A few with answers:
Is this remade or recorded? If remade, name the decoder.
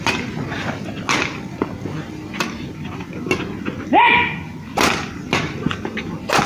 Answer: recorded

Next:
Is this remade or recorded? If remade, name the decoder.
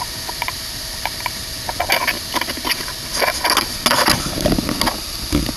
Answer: recorded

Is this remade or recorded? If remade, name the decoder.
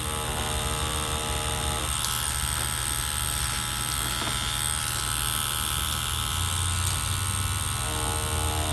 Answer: recorded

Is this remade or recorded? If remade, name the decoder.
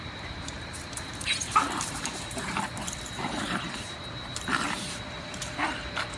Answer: remade, vocoder, BigVGAN v2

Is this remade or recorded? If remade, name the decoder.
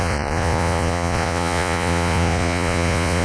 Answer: remade, vocoder, Vocos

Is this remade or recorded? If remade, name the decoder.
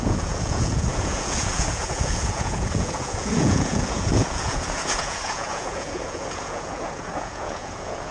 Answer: remade, vocoder, Vocos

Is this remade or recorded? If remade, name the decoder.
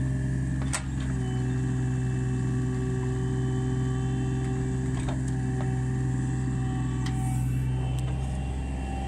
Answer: recorded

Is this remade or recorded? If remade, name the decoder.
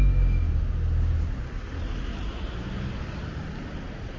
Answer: recorded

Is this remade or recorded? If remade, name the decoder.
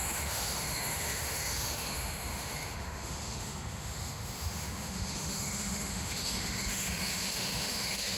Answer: remade, autoencoder, DAC-VAE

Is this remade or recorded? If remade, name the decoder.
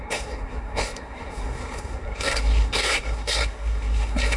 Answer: remade, codec, SNAC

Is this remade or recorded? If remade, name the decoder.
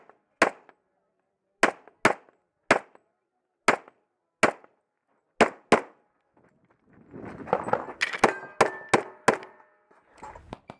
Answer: recorded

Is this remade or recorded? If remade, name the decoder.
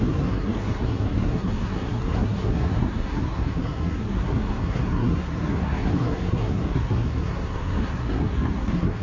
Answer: remade, codec, SNAC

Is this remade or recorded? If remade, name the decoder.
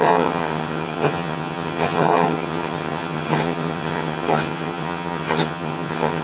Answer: remade, vocoder, HiFi-GAN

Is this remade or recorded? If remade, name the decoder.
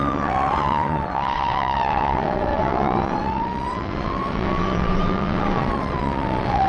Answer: remade, vocoder, WaveNeXt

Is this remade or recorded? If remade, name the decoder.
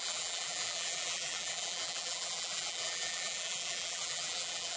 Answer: remade, vocoder, BigVGAN v2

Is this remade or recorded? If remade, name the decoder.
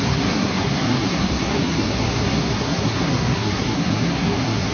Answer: remade, codec, SNAC